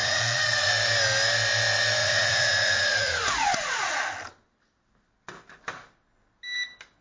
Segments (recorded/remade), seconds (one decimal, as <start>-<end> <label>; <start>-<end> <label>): 0.0-0.7 remade; 0.7-2.0 recorded; 2.0-4.0 remade; 4.0-7.0 recorded